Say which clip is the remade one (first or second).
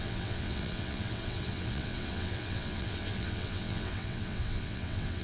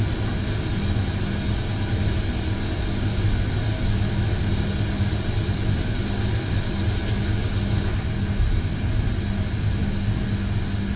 first